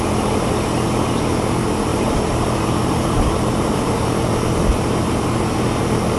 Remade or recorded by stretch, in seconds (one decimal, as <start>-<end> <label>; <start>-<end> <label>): 0.0-1.9 recorded; 1.9-4.1 remade; 4.1-6.2 recorded